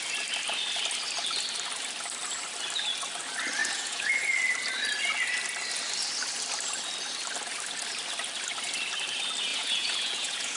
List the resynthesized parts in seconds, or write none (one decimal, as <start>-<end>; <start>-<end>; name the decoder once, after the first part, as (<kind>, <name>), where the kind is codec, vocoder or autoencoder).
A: 3.6-4.1 (vocoder, Vocos); 9.5-10.6